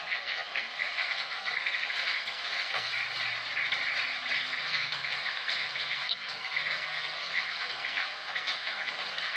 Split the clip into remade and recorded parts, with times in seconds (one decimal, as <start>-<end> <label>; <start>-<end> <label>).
0.0-2.9 remade; 2.9-4.4 recorded; 4.4-9.4 remade